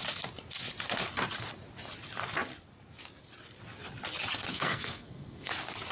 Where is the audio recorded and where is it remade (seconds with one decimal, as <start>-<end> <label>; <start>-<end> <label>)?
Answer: 0.0-4.5 recorded; 4.5-5.5 remade; 5.5-5.9 recorded